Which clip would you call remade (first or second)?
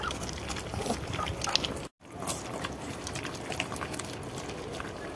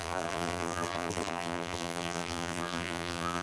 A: second